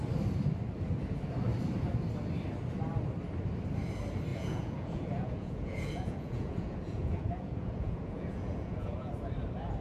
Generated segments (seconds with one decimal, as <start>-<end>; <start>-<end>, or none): 4.3-9.1